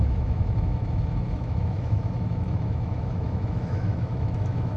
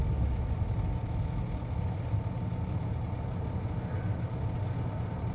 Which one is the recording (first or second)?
second